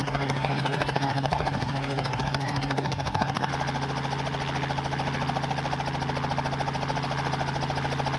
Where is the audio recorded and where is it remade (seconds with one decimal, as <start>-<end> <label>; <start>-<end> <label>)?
0.0-3.5 remade; 3.5-8.2 recorded

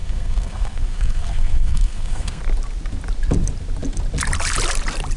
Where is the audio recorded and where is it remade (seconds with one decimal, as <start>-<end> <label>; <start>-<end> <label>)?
0.0-2.4 remade; 2.4-5.2 recorded

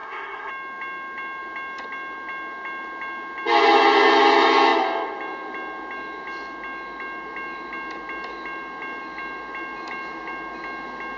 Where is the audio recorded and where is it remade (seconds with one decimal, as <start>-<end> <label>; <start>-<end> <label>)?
0.0-0.5 remade; 0.5-11.2 recorded

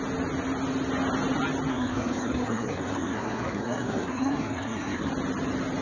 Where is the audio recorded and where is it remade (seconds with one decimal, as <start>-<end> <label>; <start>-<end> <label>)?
0.0-1.7 recorded; 1.7-5.1 remade; 5.1-5.8 recorded

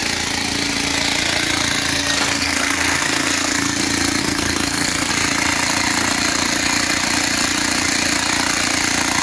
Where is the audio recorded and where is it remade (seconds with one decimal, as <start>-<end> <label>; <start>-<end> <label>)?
0.0-1.9 recorded; 1.9-3.8 remade; 3.8-4.2 recorded; 4.2-5.1 remade; 5.1-9.2 recorded

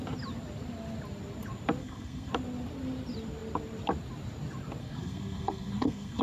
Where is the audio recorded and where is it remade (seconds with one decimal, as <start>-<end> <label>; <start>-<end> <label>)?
0.0-1.8 recorded; 1.8-2.3 remade; 2.3-4.8 recorded; 4.8-6.2 remade